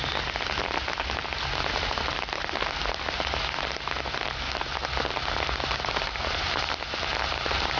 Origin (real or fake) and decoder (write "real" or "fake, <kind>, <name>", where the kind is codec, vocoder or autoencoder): real